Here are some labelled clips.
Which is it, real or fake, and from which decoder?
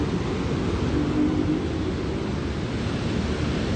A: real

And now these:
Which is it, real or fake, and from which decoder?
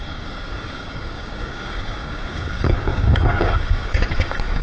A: fake, codec, DAC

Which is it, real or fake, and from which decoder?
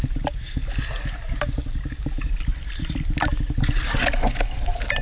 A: real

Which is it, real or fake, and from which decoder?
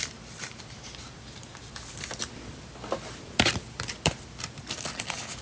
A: fake, vocoder, BigVGAN v2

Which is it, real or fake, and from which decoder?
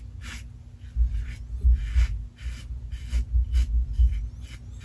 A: real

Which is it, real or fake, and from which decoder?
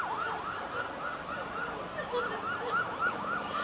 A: real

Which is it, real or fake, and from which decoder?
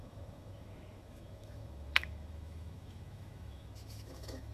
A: fake, autoencoder, DAC-VAE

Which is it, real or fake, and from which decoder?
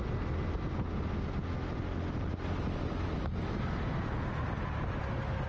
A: real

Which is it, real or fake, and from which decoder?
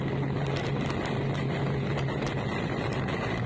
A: real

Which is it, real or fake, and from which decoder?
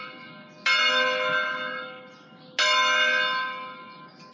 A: real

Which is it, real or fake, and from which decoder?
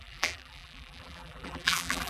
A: fake, vocoder, BigVGAN v2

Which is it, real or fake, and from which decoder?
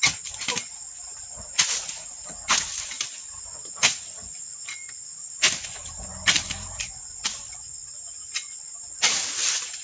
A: real